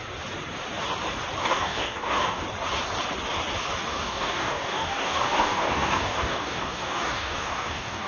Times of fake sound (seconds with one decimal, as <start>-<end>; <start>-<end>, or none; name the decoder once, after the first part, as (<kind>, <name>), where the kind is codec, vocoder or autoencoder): 1.4-2.4 (codec, DAC); 3.9-8.1